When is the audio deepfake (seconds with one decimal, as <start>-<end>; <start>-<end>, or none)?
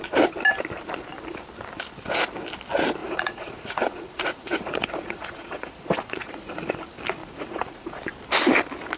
3.0-6.6; 7.2-8.0